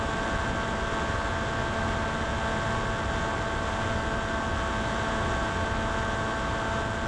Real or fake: real